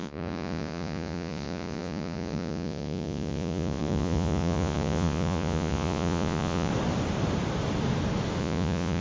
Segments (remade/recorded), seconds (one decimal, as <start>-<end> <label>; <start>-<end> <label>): 0.0-6.7 remade; 6.7-8.4 recorded; 8.4-9.0 remade